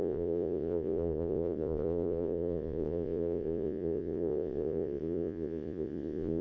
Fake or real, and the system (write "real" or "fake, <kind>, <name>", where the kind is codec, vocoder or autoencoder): fake, vocoder, Vocos